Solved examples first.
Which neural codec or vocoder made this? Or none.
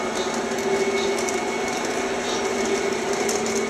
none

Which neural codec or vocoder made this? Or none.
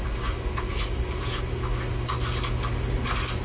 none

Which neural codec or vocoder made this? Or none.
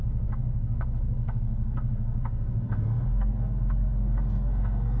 codec, SNAC